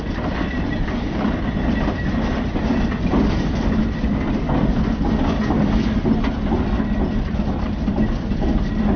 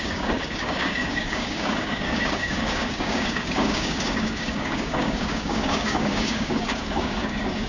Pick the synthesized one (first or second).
second